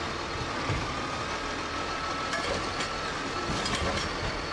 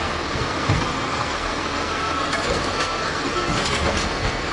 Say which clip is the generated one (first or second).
second